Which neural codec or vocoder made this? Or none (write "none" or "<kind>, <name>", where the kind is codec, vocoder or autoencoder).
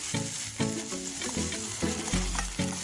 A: none